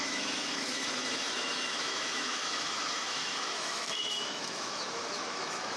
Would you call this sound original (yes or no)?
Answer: no